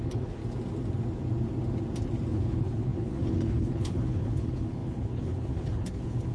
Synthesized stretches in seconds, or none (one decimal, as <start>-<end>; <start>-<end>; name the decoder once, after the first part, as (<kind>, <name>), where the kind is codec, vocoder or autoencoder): 0.0-0.4 (codec, HILCodec); 2.3-6.3